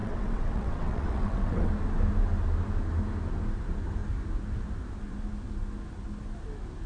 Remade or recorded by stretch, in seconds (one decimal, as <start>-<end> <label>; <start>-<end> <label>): 0.0-1.7 remade; 1.7-6.9 recorded